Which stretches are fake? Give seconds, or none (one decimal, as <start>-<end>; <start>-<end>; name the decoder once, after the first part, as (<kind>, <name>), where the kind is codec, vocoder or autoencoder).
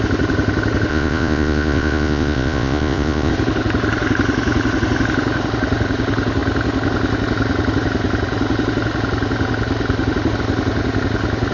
0.9-3.3 (vocoder, Vocos)